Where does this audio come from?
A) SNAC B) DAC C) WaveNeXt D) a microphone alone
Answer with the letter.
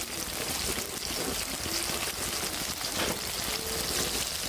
D